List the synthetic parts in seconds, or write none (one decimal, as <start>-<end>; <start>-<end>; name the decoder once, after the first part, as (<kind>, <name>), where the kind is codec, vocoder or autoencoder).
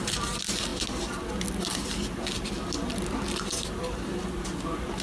none